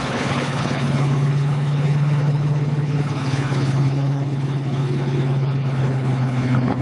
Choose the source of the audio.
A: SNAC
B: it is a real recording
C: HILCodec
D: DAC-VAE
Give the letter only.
C